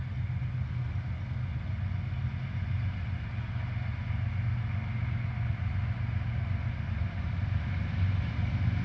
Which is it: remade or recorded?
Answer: recorded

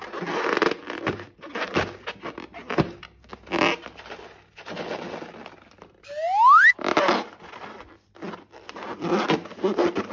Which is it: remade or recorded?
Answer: recorded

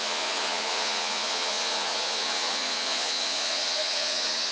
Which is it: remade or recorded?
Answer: remade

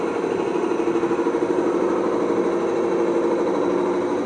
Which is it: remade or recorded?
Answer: recorded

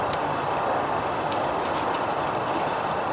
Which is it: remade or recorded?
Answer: recorded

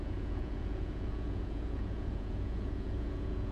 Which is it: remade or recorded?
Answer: remade